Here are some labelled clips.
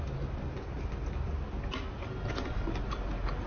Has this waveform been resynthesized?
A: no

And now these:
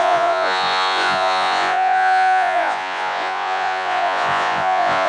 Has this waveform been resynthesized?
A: yes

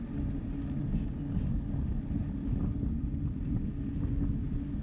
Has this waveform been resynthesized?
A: no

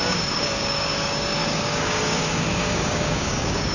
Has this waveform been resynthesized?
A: yes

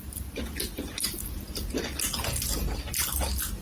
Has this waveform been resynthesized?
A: no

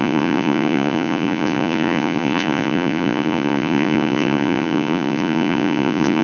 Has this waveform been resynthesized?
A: yes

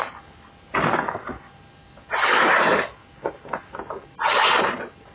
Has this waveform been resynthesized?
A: no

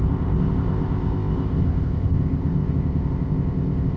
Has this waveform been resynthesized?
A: yes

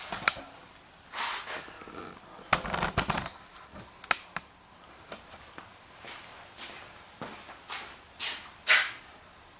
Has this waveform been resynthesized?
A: no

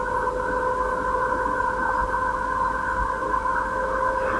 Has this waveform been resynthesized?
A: no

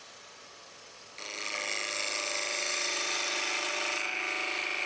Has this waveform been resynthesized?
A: no